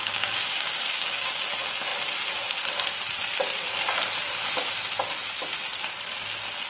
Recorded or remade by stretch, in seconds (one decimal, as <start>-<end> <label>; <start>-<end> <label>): 0.0-1.4 remade; 1.4-6.7 recorded